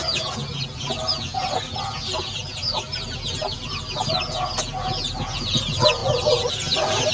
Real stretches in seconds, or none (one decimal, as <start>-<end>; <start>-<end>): 0.0-7.1